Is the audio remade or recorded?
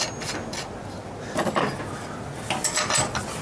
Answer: recorded